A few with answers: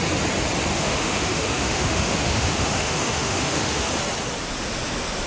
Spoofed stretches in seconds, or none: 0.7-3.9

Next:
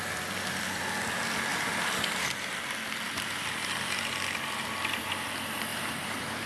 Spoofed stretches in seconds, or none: 1.5-2.6; 5.7-6.5

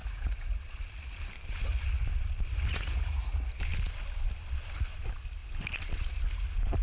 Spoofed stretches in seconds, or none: 0.0-0.5; 2.7-3.5

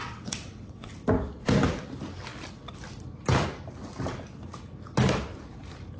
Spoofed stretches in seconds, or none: 0.0-0.9

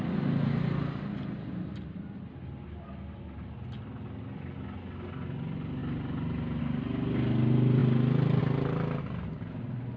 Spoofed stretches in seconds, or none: none

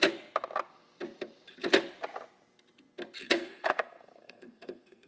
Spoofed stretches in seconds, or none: 3.2-5.1

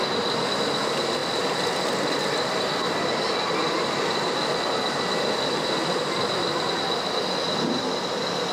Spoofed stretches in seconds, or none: none